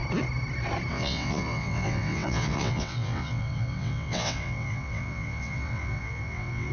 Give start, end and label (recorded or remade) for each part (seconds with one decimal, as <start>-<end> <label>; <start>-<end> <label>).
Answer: 0.0-0.9 recorded; 0.9-6.7 remade

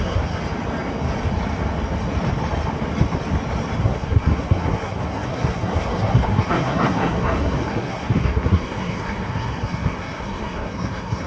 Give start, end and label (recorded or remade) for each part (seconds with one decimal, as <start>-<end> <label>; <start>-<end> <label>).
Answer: 0.0-0.4 remade; 0.4-3.8 recorded; 3.8-11.3 remade

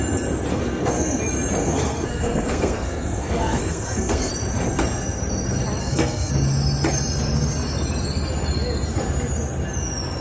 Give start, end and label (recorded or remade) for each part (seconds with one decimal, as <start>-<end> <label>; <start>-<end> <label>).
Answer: 0.0-0.5 recorded; 0.5-1.2 remade; 1.2-1.6 recorded; 1.6-4.3 remade; 4.3-5.8 recorded; 5.8-6.3 remade; 6.3-10.2 recorded